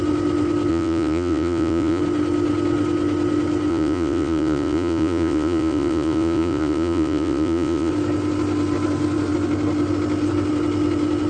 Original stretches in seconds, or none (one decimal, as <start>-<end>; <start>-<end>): 0.0-0.7; 2.0-3.7; 7.9-11.3